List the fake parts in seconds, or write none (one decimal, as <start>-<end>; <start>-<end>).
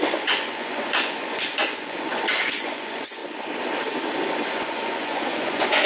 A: 0.0-3.2; 4.5-5.9